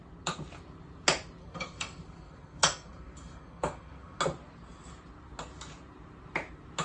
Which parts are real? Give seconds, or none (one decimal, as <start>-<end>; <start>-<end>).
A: 0.0-1.4; 4.2-6.8